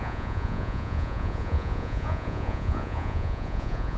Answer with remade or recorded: remade